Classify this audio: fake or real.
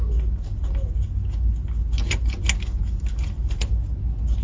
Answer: real